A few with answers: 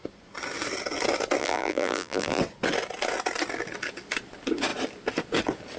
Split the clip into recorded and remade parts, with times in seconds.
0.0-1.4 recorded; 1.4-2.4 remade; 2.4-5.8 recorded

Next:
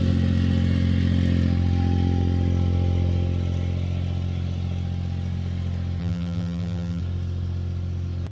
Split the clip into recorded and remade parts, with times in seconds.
0.0-6.0 recorded; 6.0-7.0 remade; 7.0-8.3 recorded

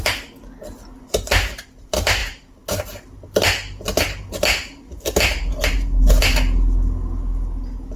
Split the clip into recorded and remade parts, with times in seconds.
0.0-8.0 recorded

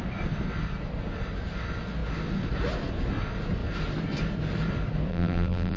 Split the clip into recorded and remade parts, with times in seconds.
0.0-5.1 recorded; 5.1-5.8 remade